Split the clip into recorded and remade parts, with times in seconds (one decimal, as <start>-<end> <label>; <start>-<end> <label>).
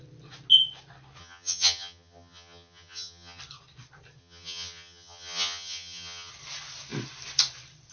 0.0-1.2 recorded; 1.2-3.4 remade; 3.4-4.2 recorded; 4.2-6.3 remade; 6.3-7.9 recorded